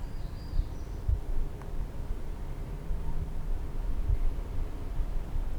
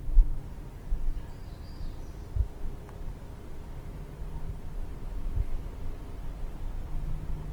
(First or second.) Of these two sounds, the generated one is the first